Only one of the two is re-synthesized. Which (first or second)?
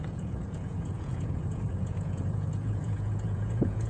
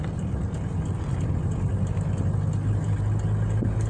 first